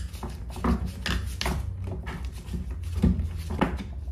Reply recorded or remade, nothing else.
recorded